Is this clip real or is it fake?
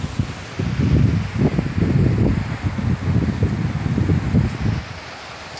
real